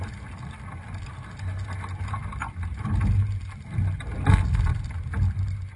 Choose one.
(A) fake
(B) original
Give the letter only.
B